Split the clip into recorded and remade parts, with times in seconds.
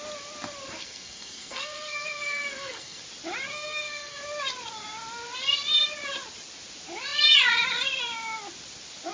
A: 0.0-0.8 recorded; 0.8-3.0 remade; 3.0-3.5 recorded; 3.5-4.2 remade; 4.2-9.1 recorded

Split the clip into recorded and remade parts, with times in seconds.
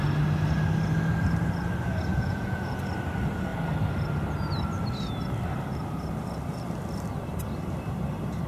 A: 0.0-2.1 recorded; 2.1-2.8 remade; 2.8-8.5 recorded